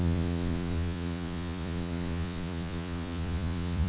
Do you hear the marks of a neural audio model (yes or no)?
yes